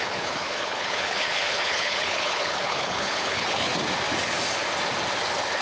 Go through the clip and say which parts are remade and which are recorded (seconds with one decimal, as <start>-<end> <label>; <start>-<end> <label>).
0.0-3.7 remade; 3.7-5.6 recorded